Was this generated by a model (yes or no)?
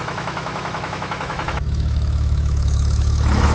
yes